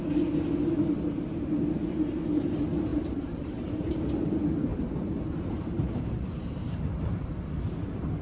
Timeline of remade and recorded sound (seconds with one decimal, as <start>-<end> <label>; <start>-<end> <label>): 0.0-2.9 recorded; 2.9-3.7 remade; 3.7-4.7 recorded; 4.7-7.3 remade; 7.3-8.2 recorded